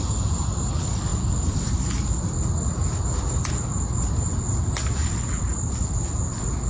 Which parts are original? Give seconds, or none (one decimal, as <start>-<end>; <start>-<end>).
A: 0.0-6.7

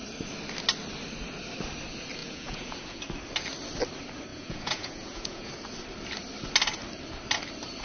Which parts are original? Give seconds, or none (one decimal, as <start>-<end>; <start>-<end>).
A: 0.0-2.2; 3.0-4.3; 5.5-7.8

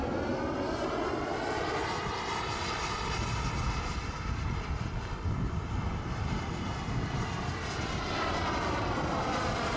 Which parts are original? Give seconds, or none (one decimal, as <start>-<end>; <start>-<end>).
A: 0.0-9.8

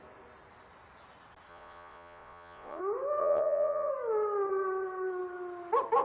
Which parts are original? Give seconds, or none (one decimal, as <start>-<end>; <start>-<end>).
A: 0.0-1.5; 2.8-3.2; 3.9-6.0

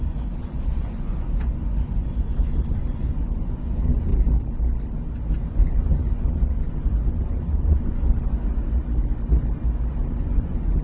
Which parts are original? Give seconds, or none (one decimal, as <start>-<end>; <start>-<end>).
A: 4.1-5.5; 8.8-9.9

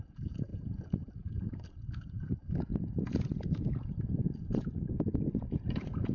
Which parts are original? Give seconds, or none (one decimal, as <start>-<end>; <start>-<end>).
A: none